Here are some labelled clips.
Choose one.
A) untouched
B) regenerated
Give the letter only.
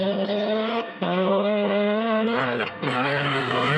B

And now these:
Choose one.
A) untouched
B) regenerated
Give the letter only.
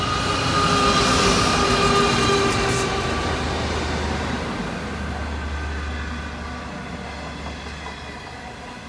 A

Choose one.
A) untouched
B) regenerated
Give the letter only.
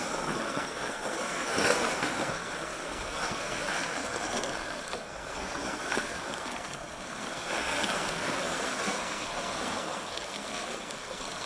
B